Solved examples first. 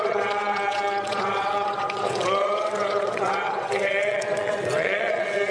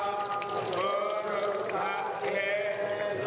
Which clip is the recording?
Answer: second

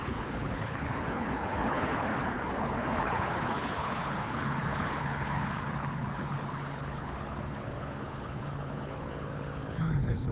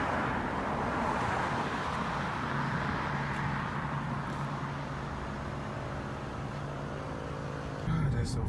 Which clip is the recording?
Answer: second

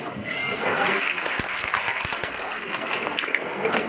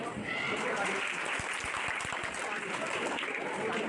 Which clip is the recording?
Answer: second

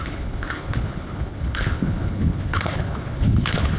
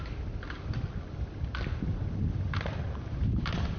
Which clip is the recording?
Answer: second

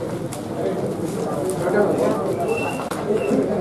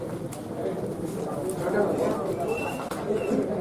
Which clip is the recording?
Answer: first